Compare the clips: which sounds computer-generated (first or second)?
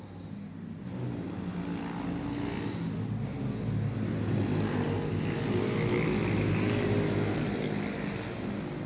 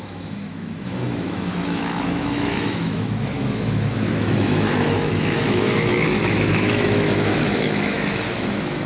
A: second